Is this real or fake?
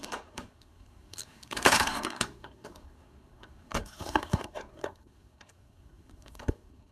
fake